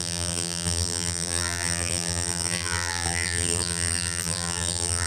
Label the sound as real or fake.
fake